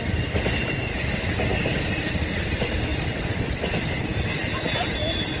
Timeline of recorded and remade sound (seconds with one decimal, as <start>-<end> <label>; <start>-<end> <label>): 0.0-5.4 recorded